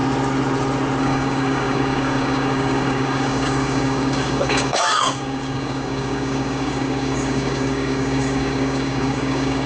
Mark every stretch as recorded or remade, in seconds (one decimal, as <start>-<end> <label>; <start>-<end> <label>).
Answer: 0.0-1.0 recorded; 1.0-9.7 remade